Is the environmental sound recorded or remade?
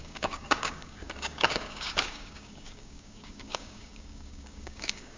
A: remade